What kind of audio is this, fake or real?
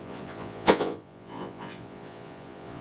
fake